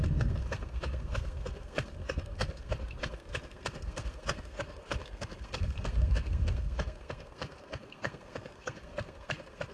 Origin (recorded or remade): remade